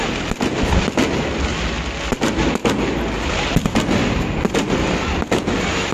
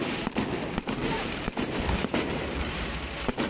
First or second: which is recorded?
first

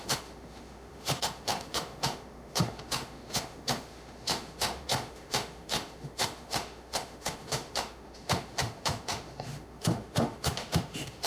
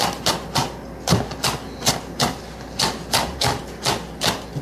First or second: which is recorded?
second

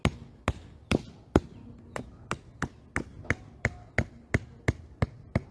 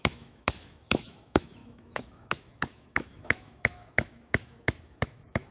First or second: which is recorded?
first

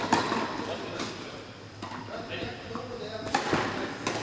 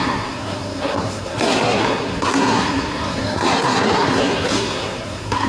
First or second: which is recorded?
first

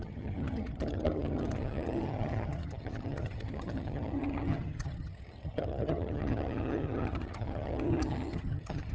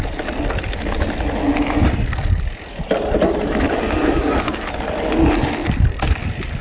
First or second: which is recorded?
second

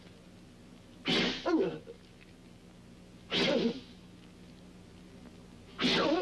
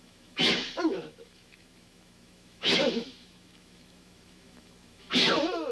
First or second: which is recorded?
first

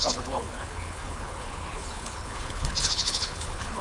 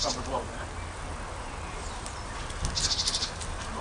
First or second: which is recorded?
second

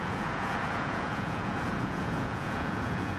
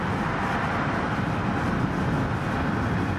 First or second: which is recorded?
second